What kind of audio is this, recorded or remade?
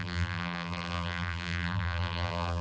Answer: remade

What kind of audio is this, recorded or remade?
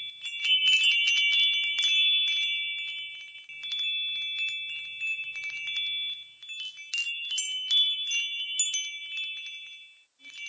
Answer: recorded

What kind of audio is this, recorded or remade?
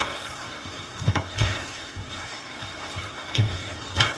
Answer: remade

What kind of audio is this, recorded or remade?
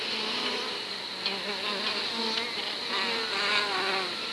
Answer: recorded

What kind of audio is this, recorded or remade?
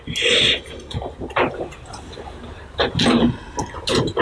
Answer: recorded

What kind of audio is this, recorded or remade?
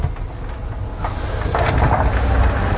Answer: recorded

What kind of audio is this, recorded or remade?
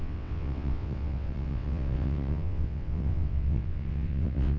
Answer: remade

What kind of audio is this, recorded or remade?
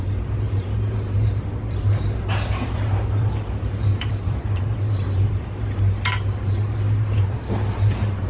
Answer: remade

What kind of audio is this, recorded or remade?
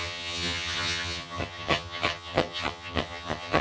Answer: remade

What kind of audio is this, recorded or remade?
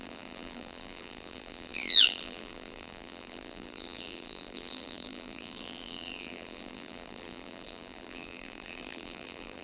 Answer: remade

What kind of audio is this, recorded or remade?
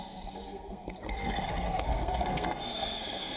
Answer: remade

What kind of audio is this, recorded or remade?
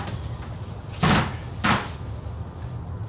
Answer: recorded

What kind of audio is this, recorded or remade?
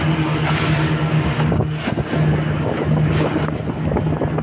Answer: recorded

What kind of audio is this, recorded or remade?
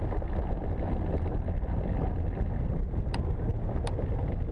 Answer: recorded